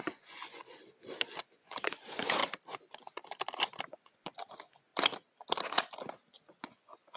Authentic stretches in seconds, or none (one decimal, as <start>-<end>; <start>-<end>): 0.6-1.4; 2.4-3.9; 4.9-6.6